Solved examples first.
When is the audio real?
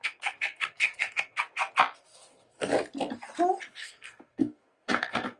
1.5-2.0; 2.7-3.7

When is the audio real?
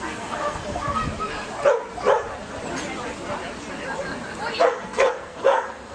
1.0-4.5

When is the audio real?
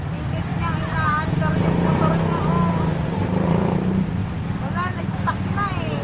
0.0-6.0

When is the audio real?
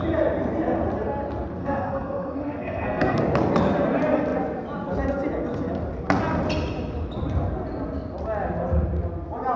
0.0-1.6; 3.2-9.6